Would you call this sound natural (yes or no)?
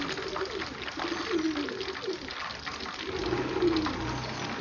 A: yes